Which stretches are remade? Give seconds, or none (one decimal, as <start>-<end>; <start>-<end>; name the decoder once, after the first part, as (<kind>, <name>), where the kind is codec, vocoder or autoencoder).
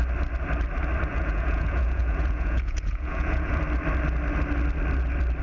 1.1-3.6 (vocoder, Vocos)